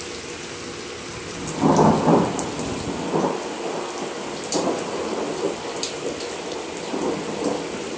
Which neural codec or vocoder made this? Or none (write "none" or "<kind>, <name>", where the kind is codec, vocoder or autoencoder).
none